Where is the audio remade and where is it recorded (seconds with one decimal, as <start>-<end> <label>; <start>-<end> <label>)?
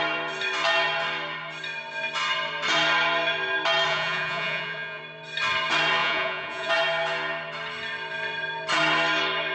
0.0-3.9 recorded; 3.9-5.0 remade; 5.0-6.0 recorded; 6.0-6.7 remade; 6.7-9.5 recorded